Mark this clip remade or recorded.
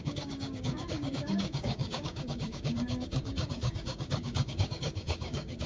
remade